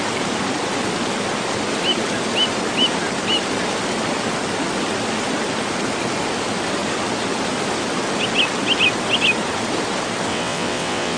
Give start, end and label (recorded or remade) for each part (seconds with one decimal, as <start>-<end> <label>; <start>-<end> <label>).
0.0-10.3 recorded; 10.3-11.2 remade